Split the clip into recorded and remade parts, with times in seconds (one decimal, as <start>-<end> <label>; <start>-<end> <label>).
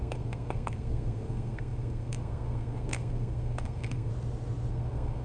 0.0-4.1 remade; 4.1-4.7 recorded; 4.7-5.2 remade